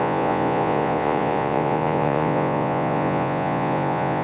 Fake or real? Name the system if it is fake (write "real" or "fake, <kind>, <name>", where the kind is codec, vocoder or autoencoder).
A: fake, vocoder, Vocos